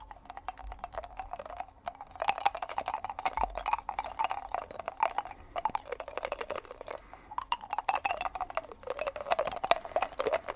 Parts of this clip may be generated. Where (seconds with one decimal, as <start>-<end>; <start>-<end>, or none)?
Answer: 0.6-1.8; 4.2-8.1